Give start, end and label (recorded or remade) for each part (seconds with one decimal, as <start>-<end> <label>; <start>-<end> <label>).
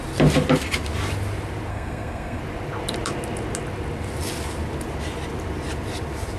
0.0-1.7 recorded; 1.7-2.4 remade; 2.4-6.4 recorded